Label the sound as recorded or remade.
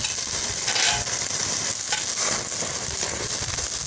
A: recorded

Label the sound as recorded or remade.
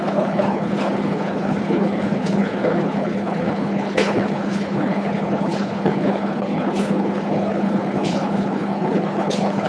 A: remade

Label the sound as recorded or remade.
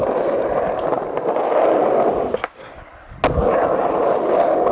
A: recorded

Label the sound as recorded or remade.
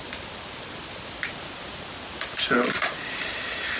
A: recorded